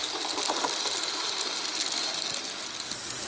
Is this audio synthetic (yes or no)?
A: no